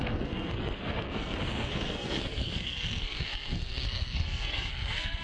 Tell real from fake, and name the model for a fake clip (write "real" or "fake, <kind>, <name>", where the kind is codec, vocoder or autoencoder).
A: fake, codec, SNAC